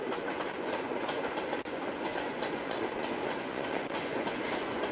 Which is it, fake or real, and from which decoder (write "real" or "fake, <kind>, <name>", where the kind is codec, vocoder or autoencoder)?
fake, vocoder, Vocos